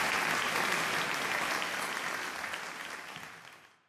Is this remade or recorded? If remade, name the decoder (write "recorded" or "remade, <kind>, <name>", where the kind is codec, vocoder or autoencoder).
recorded